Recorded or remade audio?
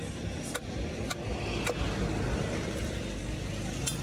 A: recorded